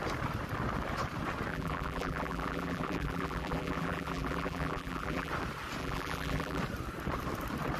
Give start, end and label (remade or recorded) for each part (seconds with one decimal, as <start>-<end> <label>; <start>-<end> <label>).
0.0-1.5 recorded; 1.5-5.3 remade; 5.3-5.8 recorded; 5.8-6.6 remade; 6.6-7.8 recorded